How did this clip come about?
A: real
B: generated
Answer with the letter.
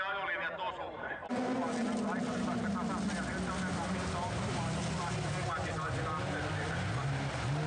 A